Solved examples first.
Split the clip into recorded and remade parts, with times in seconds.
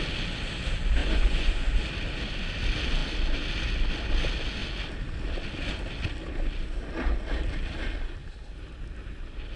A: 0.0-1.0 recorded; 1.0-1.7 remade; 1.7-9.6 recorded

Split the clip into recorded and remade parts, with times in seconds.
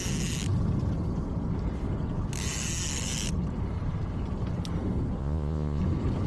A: 0.0-5.2 recorded; 5.2-5.8 remade; 5.8-6.3 recorded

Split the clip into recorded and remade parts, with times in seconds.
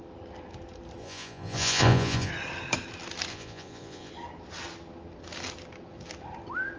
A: 0.0-1.0 recorded; 1.0-2.3 remade; 2.3-3.3 recorded; 3.3-4.1 remade; 4.1-6.8 recorded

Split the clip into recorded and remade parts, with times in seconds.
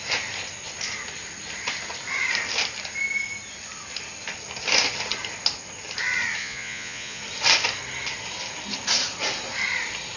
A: 0.0-6.4 recorded; 6.4-7.2 remade; 7.2-10.2 recorded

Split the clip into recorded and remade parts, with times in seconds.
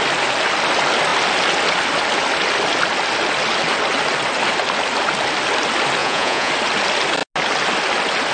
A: 0.0-6.0 recorded; 6.0-6.5 remade; 6.5-8.3 recorded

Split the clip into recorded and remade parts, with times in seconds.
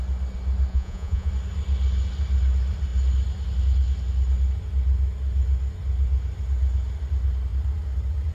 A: 0.0-0.7 recorded; 0.7-1.3 remade; 1.3-8.3 recorded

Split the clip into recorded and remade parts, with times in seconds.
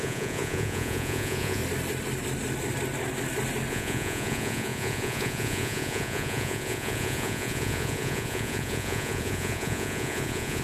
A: 0.0-1.6 remade; 1.6-3.7 recorded; 3.7-10.6 remade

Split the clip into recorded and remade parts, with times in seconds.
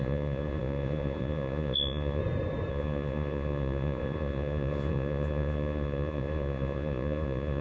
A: 0.0-2.2 remade; 2.2-2.7 recorded; 2.7-7.6 remade